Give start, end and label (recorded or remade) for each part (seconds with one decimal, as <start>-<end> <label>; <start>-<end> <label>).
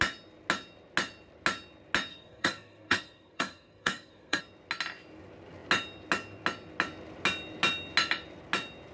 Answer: 0.0-2.1 recorded; 2.1-4.4 remade; 4.4-8.9 recorded